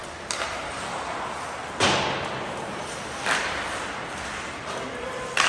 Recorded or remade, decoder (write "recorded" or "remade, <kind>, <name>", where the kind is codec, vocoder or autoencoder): recorded